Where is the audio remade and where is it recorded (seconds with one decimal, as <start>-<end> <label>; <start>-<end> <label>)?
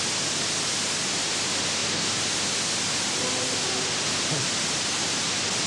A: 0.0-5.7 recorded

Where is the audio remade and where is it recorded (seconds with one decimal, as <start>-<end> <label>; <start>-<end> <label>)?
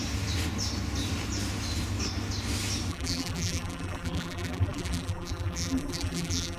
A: 0.0-2.9 recorded; 2.9-6.6 remade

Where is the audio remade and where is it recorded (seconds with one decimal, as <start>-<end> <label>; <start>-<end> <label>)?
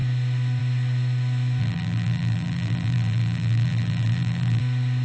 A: 0.0-1.6 recorded; 1.6-4.6 remade; 4.6-5.0 recorded